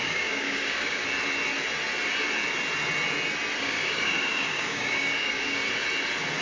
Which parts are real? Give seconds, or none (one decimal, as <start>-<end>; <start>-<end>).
1.0-3.6; 5.6-6.4